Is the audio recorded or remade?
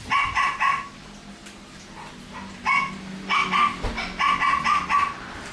recorded